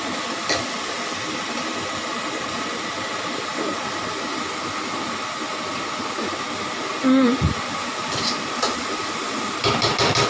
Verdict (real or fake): fake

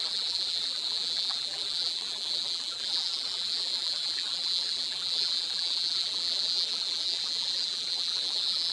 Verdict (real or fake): fake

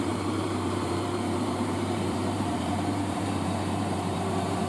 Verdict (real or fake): fake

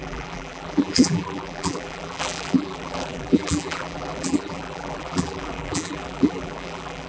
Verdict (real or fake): fake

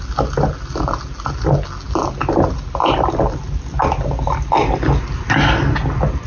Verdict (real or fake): real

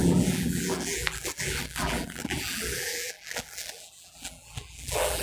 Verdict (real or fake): fake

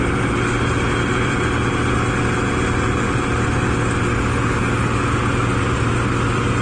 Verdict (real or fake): real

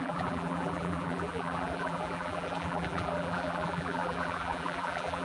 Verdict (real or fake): fake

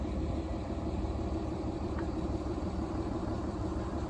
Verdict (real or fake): fake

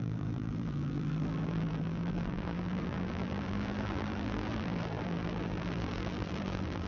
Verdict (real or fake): fake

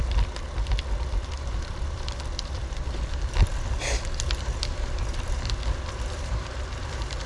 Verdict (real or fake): fake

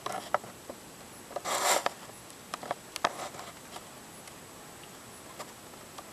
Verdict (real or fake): real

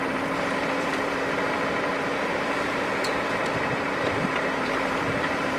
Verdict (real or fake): fake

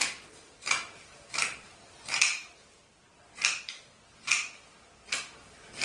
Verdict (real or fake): fake